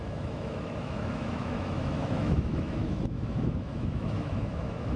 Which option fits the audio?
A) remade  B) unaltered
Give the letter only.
A